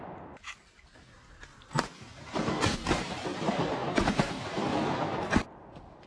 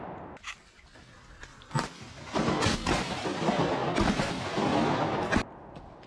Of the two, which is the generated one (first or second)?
first